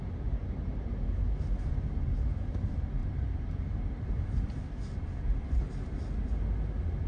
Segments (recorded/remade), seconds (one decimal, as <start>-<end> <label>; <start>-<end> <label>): 0.0-0.9 recorded; 0.9-1.4 remade; 1.4-3.0 recorded; 3.0-4.1 remade; 4.1-7.1 recorded